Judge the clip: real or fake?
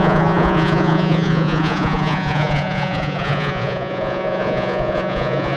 fake